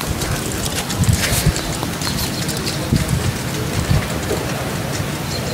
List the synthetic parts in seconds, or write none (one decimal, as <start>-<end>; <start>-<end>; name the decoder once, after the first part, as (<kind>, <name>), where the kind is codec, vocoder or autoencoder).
none